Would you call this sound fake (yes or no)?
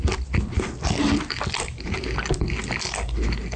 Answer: no